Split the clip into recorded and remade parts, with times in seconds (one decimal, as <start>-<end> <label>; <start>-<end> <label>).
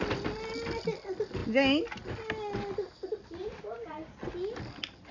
0.0-3.0 recorded; 3.0-4.3 remade; 4.3-5.1 recorded